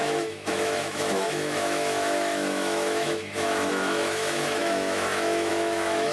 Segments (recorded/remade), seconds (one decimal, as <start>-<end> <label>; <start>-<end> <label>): 0.0-6.1 remade